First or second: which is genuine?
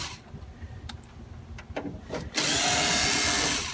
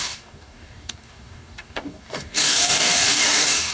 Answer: first